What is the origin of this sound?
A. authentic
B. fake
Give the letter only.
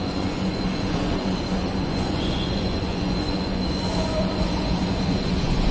B